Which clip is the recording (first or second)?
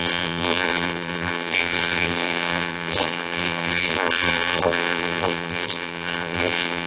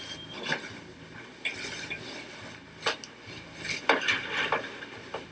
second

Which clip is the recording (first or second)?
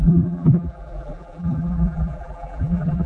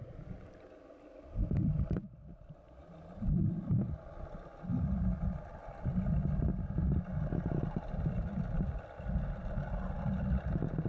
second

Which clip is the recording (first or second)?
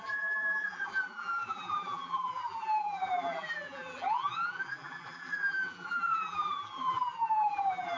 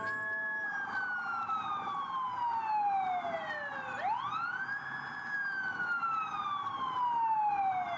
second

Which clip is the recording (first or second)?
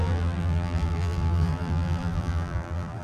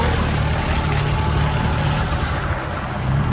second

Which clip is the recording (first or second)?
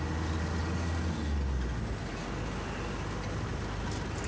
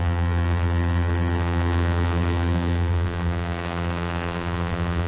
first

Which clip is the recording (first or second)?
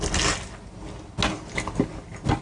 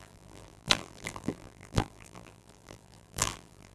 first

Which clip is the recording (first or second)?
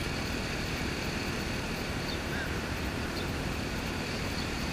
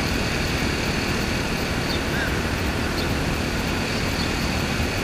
second